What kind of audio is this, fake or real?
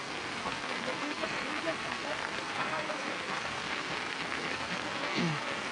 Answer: fake